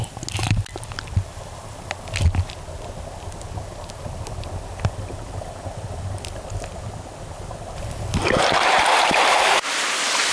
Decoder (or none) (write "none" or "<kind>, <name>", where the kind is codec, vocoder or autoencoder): none